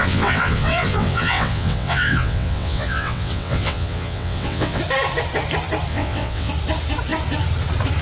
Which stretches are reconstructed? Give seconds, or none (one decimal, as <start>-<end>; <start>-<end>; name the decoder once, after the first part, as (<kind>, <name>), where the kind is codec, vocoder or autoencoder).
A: 0.0-4.8 (vocoder, WaveNeXt); 5.9-6.5